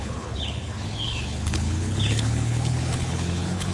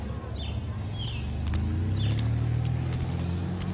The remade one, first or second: first